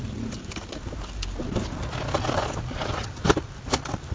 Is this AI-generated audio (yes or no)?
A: no